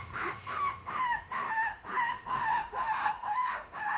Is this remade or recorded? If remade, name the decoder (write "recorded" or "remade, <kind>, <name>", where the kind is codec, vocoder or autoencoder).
remade, autoencoder, DAC-VAE